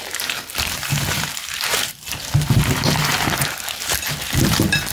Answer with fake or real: fake